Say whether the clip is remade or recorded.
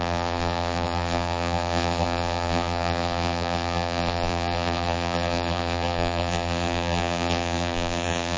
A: remade